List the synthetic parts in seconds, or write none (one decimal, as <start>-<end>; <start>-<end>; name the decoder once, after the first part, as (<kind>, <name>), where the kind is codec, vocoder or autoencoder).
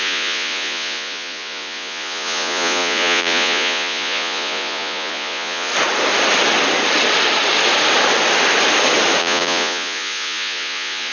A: 0.0-5.7 (vocoder, Vocos); 9.2-11.1